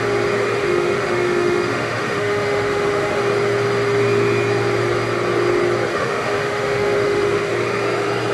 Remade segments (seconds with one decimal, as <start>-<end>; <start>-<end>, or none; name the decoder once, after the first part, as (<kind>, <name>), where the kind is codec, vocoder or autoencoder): 0.6-3.2 (autoencoder, DAC-VAE); 5.9-7.5